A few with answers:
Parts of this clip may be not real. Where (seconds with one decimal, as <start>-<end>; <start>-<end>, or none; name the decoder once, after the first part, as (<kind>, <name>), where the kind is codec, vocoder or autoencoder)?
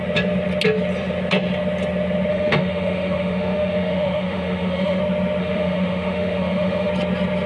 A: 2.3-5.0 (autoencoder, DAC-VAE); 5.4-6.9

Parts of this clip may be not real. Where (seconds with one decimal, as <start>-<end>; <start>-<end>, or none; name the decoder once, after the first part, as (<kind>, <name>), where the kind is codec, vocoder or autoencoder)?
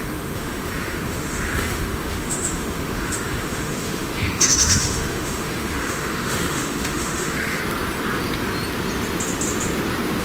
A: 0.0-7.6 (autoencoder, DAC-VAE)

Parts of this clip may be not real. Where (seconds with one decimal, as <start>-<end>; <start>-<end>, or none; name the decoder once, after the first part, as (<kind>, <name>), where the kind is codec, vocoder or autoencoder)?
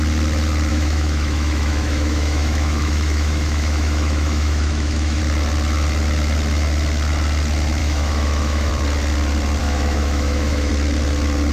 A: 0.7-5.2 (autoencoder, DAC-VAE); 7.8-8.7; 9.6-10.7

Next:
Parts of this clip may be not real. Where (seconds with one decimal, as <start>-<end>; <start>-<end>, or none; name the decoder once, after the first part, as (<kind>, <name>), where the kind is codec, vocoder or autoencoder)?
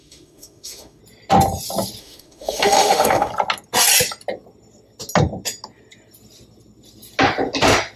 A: 0.0-1.0 (autoencoder, DAC-VAE); 2.0-3.3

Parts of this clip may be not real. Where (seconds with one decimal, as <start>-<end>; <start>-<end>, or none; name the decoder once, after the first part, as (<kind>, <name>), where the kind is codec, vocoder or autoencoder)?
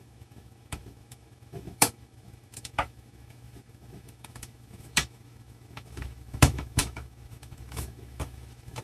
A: 0.0-8.8 (autoencoder, DAC-VAE)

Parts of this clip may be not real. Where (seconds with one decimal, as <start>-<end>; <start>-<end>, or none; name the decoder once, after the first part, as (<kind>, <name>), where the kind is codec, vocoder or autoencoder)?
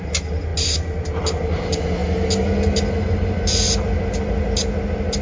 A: none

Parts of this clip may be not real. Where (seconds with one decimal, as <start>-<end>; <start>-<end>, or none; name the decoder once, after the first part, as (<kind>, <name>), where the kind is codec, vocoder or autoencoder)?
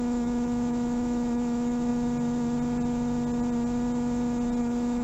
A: 0.0-1.9 (autoencoder, DAC-VAE); 4.6-5.0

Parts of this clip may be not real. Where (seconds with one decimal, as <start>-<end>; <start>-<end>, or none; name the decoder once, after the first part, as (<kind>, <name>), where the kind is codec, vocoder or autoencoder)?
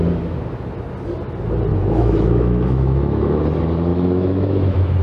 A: 1.7-3.4 (autoencoder, DAC-VAE); 3.9-5.0